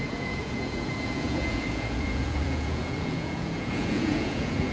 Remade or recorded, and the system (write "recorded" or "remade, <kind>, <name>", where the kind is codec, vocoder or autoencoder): remade, vocoder, Vocos